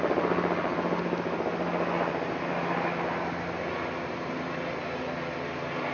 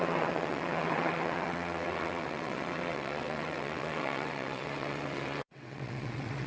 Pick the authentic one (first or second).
first